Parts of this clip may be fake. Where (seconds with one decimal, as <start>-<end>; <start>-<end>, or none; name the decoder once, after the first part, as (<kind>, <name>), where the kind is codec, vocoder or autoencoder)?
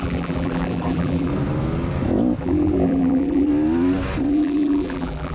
0.0-1.3 (vocoder, BigVGAN v2); 2.4-3.5; 4.3-5.3